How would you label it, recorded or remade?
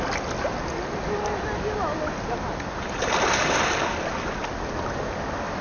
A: recorded